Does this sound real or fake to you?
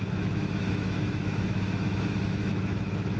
fake